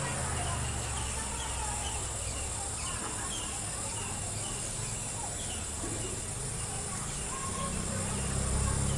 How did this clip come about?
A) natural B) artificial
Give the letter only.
A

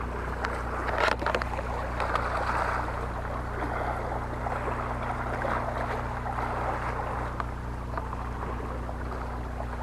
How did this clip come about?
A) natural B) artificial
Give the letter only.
A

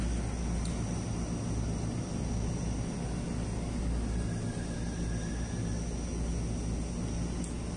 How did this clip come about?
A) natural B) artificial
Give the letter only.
A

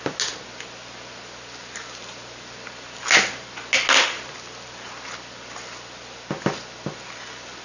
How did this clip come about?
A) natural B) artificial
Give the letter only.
A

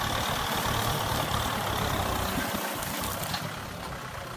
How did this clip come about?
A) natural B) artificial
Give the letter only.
A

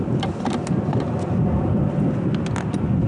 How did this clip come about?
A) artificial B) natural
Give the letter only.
B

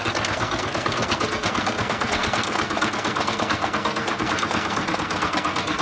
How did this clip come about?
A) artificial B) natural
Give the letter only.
A